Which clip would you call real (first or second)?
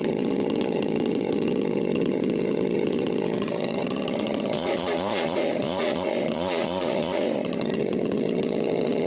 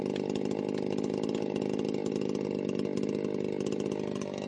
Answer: second